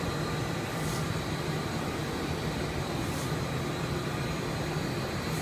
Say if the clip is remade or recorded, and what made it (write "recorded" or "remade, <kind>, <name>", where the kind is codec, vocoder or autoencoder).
recorded